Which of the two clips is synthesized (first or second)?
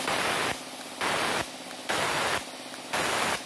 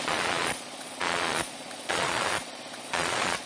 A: second